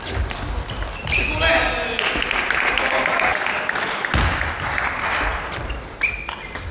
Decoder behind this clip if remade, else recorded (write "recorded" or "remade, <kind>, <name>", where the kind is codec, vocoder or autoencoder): recorded